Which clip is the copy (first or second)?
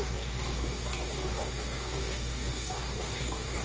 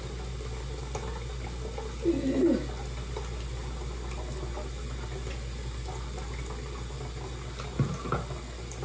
first